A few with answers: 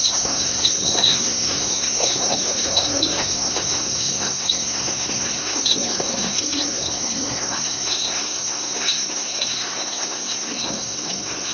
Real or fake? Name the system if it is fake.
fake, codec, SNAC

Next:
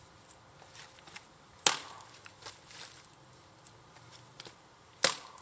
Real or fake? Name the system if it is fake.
real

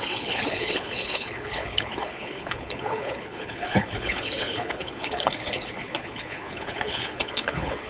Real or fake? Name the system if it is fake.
fake, codec, HILCodec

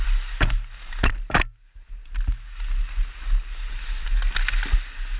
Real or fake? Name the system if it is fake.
real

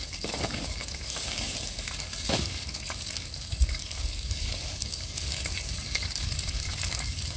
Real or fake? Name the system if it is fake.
fake, codec, DAC